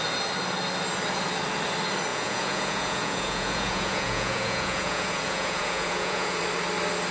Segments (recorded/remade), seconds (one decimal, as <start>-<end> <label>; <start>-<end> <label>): 0.0-2.1 recorded; 2.1-6.4 remade; 6.4-7.1 recorded